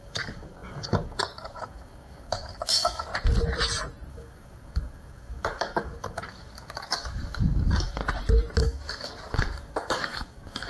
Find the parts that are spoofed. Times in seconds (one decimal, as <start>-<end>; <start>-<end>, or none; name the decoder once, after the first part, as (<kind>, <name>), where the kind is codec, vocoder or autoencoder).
0.0-3.1 (codec, DAC); 4.1-8.0; 8.6-10.7